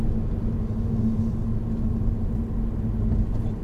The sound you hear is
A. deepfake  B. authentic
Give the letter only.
B